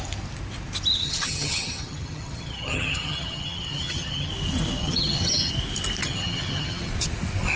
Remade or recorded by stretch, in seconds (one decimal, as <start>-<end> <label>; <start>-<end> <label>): 0.0-1.0 recorded; 1.0-4.3 remade; 4.3-4.8 recorded; 4.8-5.5 remade; 5.5-6.0 recorded; 6.0-6.9 remade; 6.9-7.6 recorded